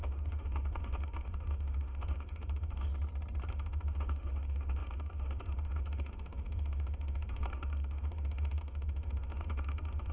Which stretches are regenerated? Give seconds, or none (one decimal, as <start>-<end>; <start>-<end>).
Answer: 0.0-2.9; 3.5-10.1